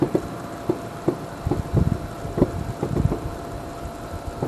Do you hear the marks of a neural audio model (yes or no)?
no